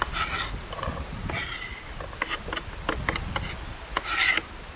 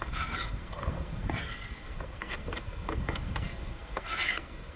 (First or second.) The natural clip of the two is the first